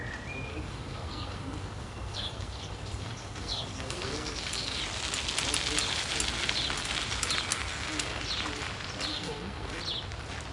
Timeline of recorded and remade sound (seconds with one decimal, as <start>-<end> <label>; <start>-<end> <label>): 0.0-0.5 recorded; 0.5-4.8 remade; 4.8-7.5 recorded; 7.5-8.2 remade; 8.2-9.1 recorded; 9.1-9.8 remade; 9.8-10.5 recorded

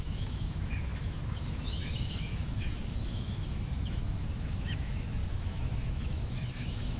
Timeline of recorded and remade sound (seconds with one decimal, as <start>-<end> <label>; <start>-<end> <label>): 0.0-7.0 remade

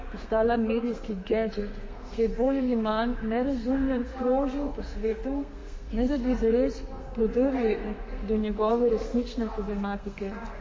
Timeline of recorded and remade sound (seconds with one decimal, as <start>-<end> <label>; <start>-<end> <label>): 0.0-10.6 remade

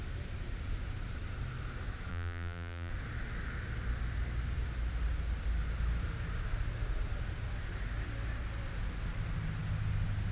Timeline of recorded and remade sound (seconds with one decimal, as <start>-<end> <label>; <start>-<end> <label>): 0.0-2.1 recorded; 2.1-2.9 remade; 2.9-10.3 recorded

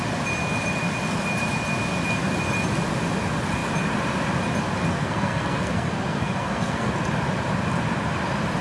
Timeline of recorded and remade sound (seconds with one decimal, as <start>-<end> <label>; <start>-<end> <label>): 0.0-4.9 recorded; 4.9-6.9 remade; 6.9-8.6 recorded

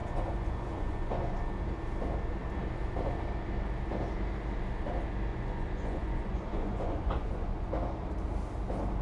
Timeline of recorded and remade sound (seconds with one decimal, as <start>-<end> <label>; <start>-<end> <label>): 0.0-1.4 remade; 1.4-5.3 recorded; 5.3-7.7 remade; 7.7-9.0 recorded

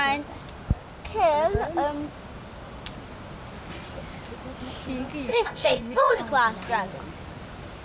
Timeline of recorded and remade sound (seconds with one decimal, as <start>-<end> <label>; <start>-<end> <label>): 0.0-5.3 recorded; 5.3-6.2 remade; 6.2-7.8 recorded

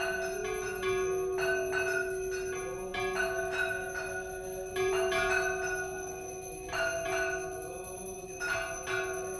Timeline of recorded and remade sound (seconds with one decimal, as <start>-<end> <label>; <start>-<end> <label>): 0.0-9.4 recorded